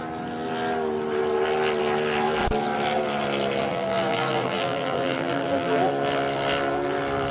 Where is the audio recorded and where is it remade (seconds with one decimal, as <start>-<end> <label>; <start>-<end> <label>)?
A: 0.0-3.7 recorded; 3.7-5.9 remade; 5.9-7.3 recorded